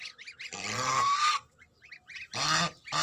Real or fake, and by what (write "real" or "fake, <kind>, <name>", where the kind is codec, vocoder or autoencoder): real